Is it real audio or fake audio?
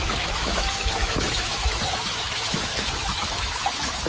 fake